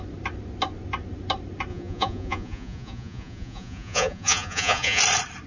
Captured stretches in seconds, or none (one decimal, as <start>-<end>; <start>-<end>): 0.0-1.7; 5.0-5.5